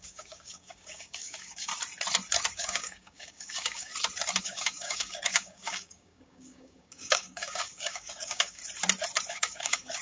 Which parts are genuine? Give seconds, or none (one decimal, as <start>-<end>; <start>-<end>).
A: 1.7-2.5; 3.9-4.4; 8.6-9.3